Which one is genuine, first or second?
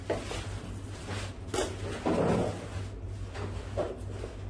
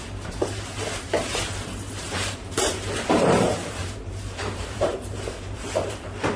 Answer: first